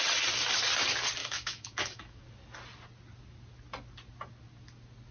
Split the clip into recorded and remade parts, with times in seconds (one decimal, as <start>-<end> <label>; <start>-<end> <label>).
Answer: 0.0-1.2 recorded; 1.2-2.2 remade; 2.2-5.1 recorded